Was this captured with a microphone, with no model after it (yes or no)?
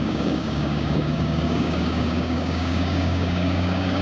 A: no